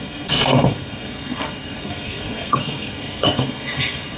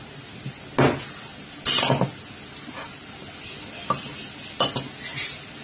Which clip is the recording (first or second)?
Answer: second